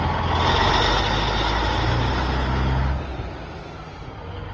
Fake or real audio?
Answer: real